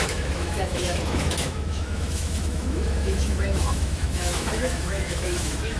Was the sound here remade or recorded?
remade